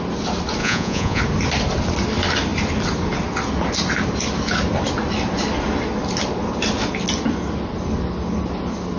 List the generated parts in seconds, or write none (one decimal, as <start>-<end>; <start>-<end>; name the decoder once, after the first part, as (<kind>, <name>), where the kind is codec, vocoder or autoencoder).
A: 0.6-1.2 (vocoder, Vocos)

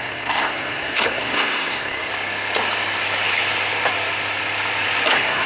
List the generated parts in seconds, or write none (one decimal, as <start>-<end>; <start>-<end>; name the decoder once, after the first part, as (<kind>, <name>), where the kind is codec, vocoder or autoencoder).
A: 0.0-2.1 (codec, SNAC); 5.1-5.5

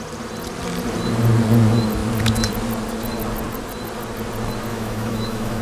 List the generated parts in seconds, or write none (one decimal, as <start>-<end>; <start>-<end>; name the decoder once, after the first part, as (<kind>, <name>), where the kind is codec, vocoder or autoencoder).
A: 4.7-5.6 (autoencoder, DAC-VAE)

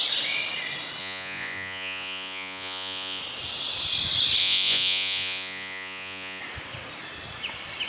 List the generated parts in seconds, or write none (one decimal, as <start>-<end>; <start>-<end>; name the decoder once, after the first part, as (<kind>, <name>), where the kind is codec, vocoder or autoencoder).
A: 1.0-3.2 (vocoder, Vocos); 4.4-6.4

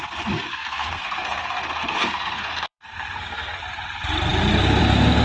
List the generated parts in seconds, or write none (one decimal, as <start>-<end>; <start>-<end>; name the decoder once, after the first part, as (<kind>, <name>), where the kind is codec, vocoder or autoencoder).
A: 0.5-3.6 (codec, SNAC)

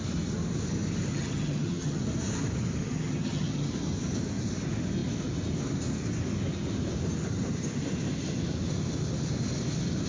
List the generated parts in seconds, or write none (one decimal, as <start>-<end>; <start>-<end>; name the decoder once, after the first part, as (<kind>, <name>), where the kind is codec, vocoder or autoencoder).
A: 1.1-2.0 (vocoder, HiFi-GAN); 2.8-3.7

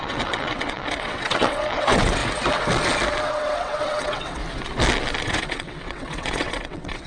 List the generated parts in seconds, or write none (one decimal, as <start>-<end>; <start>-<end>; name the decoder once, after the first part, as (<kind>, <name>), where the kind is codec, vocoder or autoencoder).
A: 0.0-2.2 (vocoder, WaveNeXt); 3.3-4.4; 5.2-7.1

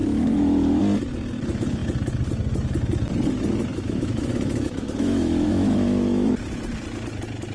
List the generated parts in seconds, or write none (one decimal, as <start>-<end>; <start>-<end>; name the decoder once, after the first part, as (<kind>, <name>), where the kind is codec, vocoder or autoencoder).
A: 0.0-0.8 (autoencoder, DAC-VAE); 3.7-6.3